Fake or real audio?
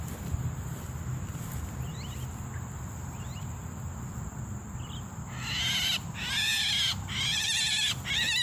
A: real